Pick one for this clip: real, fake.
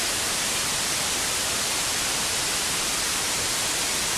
fake